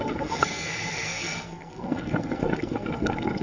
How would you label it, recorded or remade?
remade